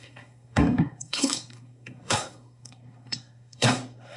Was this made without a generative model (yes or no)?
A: no